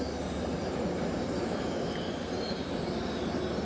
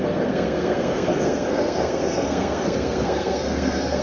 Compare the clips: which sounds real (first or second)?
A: first